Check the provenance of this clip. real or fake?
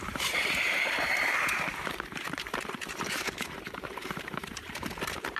fake